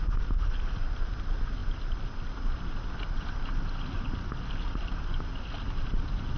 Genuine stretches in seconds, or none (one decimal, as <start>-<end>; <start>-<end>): 0.0-6.4